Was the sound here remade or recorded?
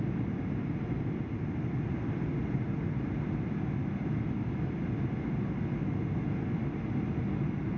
recorded